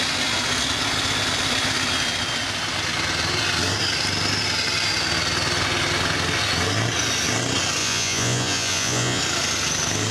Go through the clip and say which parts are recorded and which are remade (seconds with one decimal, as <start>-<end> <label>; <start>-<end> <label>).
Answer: 0.0-7.8 recorded; 7.8-9.2 remade; 9.2-10.1 recorded